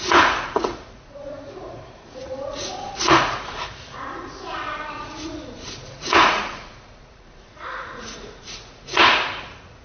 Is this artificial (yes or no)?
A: yes